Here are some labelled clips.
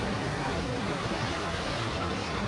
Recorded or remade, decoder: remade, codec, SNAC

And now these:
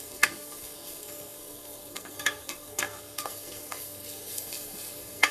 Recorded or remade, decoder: remade, codec, SNAC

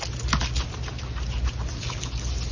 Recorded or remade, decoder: recorded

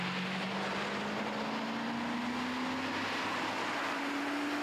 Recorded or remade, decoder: recorded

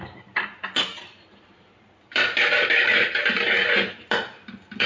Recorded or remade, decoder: remade, vocoder, BigVGAN v2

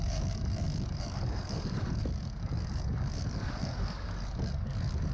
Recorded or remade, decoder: remade, codec, DAC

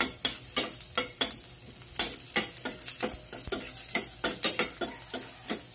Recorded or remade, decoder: recorded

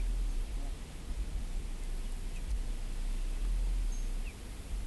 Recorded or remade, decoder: recorded